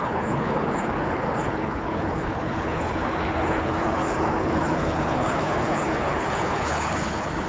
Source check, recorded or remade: remade